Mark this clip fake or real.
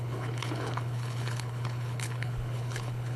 fake